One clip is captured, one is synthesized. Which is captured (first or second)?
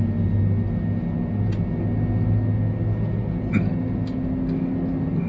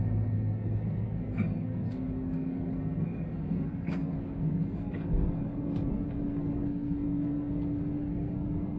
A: first